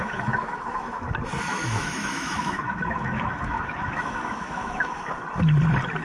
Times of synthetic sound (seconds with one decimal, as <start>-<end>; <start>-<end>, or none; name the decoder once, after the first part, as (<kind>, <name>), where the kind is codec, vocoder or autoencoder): 0.0-1.1 (autoencoder, DAC-VAE); 1.5-5.1